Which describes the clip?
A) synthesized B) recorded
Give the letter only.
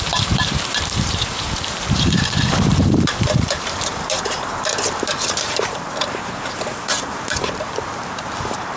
A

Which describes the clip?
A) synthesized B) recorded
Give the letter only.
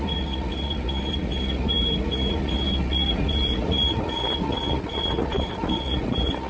A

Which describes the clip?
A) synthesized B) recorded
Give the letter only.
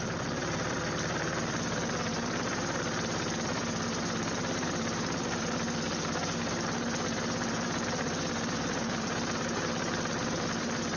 A